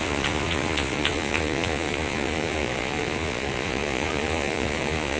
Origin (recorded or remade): remade